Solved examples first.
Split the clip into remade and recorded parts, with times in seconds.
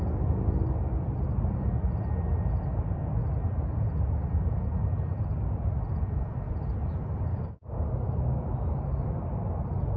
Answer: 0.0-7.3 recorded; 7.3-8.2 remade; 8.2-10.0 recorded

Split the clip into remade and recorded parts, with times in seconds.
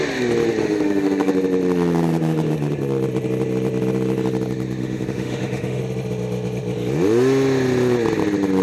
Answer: 0.0-0.6 recorded; 0.6-1.3 remade; 1.3-4.8 recorded; 4.8-5.8 remade; 5.8-8.6 recorded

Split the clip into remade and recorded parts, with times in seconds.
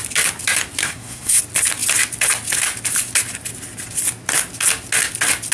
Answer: 0.0-0.8 recorded; 0.8-1.4 remade; 1.4-5.5 recorded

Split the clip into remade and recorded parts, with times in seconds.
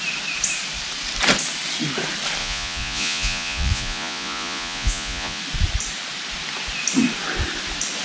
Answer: 0.0-2.4 recorded; 2.4-5.4 remade; 5.4-8.0 recorded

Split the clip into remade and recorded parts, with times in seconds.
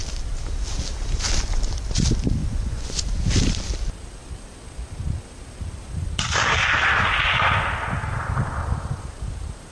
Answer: 0.0-2.4 recorded; 2.4-3.0 remade; 3.0-9.7 recorded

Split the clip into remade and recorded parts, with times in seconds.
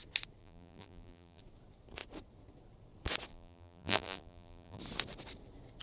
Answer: 0.0-0.4 recorded; 0.4-1.4 remade; 1.4-3.3 recorded; 3.3-4.8 remade; 4.8-5.8 recorded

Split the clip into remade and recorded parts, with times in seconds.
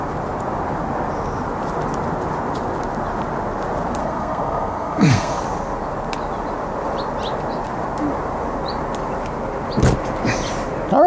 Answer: 0.0-4.0 recorded; 4.0-5.4 remade; 5.4-11.1 recorded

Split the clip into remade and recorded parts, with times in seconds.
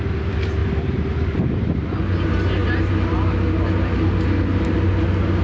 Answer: 0.0-5.4 recorded